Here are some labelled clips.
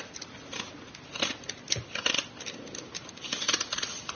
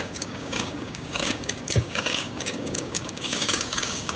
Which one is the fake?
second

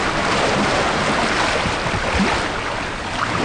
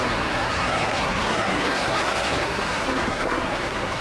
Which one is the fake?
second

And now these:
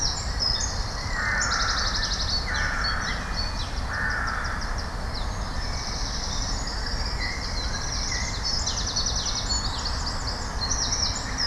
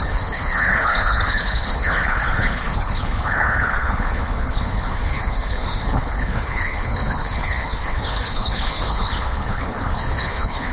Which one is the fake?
second